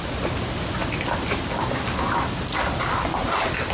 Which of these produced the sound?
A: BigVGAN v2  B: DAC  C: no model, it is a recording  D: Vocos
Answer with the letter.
C